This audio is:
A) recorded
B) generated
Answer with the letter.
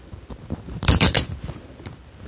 B